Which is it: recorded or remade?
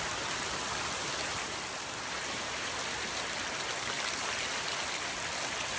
recorded